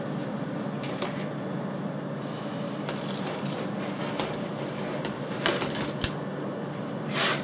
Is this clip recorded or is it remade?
recorded